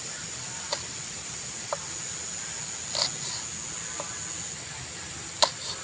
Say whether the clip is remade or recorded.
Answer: recorded